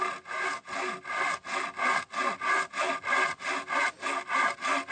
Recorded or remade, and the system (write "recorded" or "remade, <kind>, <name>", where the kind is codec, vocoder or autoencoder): recorded